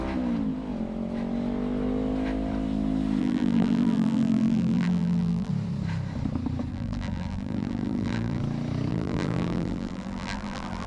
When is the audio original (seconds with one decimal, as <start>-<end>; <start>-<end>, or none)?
0.0-3.2; 5.5-6.7; 8.4-8.9